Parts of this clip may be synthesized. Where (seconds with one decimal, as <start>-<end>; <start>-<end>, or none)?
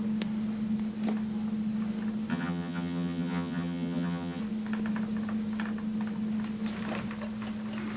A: 2.3-4.4